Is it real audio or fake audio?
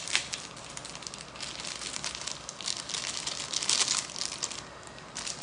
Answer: real